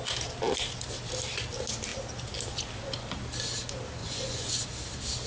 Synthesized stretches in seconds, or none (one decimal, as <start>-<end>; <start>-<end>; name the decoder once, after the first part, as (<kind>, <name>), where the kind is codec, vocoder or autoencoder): 4.0-4.5 (vocoder, Vocos)